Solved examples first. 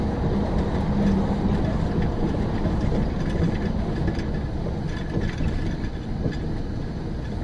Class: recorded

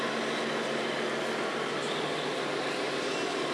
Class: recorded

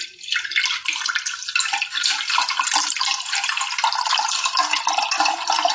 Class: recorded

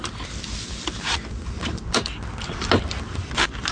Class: recorded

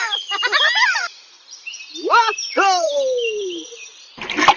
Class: recorded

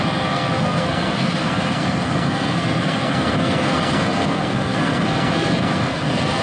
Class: remade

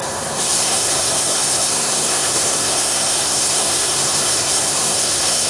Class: remade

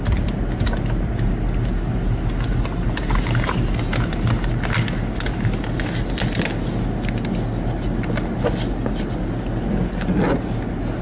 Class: recorded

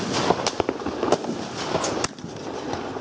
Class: recorded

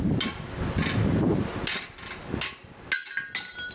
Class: recorded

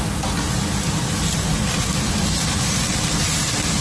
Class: recorded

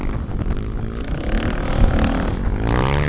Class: recorded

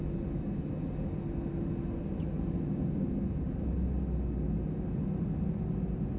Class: recorded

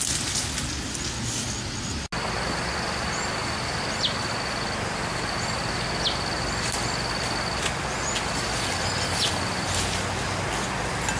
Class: recorded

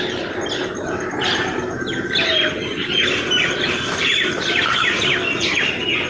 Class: recorded